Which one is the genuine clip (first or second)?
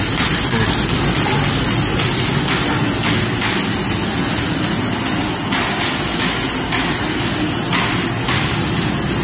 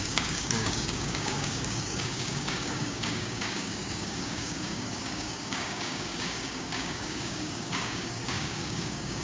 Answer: first